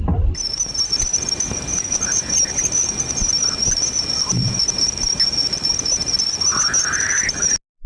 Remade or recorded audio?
recorded